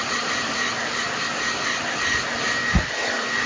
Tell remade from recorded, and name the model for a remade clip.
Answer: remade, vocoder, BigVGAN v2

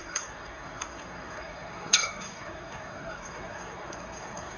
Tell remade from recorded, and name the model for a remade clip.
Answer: remade, codec, SNAC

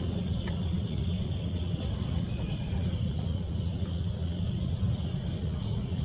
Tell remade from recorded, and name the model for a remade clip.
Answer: remade, vocoder, Vocos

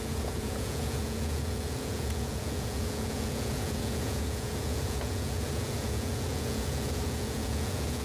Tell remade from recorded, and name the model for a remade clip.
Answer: remade, vocoder, Vocos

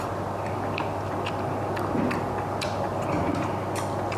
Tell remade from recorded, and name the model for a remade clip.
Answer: recorded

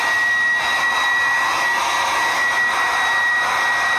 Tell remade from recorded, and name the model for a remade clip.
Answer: recorded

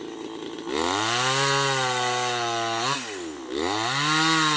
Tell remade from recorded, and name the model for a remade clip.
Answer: recorded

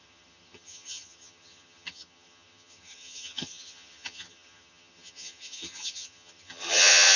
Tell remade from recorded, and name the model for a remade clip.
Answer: remade, vocoder, HiFi-GAN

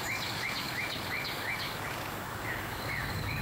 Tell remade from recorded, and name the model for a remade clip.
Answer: remade, codec, DAC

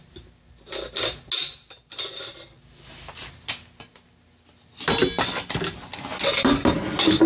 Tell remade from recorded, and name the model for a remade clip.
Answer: recorded